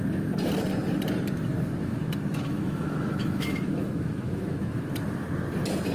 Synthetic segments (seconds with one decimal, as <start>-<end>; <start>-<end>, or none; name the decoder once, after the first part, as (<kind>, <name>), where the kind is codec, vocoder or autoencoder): 1.8-4.9 (autoencoder, DAC-VAE)